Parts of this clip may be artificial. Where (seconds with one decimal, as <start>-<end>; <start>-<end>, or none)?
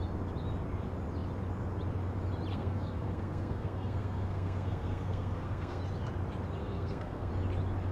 2.5-5.8; 6.6-7.3